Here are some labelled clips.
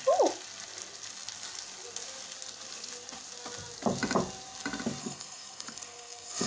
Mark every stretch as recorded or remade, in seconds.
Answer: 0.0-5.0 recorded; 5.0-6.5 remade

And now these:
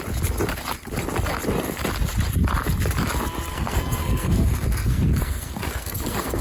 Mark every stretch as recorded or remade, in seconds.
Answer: 0.0-3.5 recorded; 3.5-6.4 remade